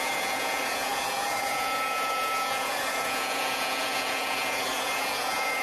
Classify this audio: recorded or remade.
remade